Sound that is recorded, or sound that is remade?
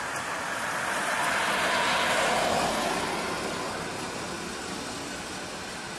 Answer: recorded